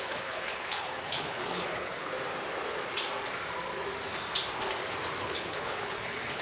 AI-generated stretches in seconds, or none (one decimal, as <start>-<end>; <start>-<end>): 0.0-2.1; 5.2-6.4